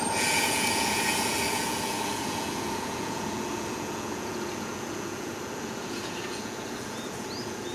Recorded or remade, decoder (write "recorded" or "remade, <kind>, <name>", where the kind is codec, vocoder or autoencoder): remade, vocoder, Vocos